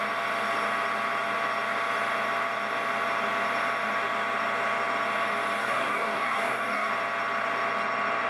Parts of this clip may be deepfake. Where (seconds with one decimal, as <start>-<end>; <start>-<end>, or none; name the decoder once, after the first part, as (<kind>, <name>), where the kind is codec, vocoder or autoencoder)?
5.6-6.9 (codec, DAC)